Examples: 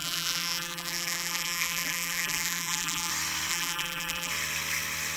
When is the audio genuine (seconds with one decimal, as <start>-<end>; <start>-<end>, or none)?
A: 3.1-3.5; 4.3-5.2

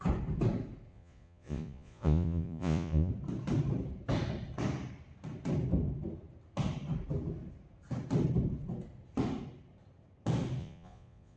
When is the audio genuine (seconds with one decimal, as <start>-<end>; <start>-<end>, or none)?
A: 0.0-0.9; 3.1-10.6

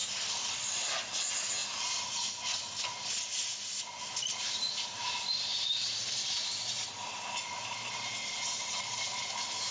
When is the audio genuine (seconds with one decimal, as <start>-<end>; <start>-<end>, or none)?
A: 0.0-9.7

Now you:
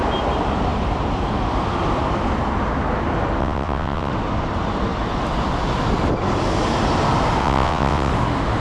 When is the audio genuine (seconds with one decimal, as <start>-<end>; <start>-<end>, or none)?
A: 0.0-3.4; 4.1-7.4; 8.1-8.6

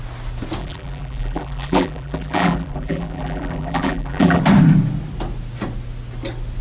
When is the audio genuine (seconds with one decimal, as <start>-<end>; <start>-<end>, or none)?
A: 0.0-0.6; 4.4-6.6